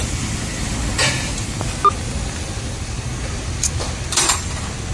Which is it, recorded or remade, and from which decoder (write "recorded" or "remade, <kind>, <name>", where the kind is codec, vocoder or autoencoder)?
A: recorded